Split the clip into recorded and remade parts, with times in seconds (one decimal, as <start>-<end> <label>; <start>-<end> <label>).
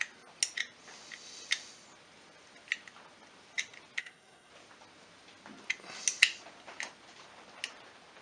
0.0-4.0 recorded; 4.0-4.5 remade; 4.5-8.2 recorded